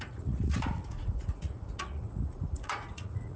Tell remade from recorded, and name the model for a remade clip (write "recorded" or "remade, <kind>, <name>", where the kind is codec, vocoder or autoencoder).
remade, vocoder, Vocos